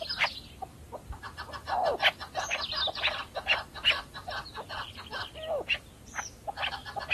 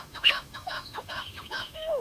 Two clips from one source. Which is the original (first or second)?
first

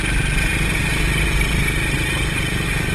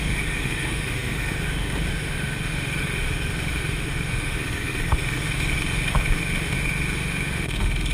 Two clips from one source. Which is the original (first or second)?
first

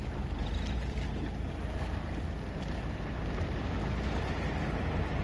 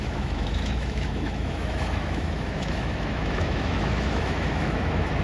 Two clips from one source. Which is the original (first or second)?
first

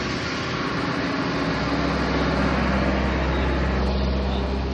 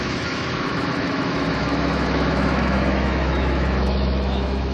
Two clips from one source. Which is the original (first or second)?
first